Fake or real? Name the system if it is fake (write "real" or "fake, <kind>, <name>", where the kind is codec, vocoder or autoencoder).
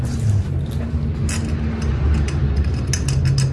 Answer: real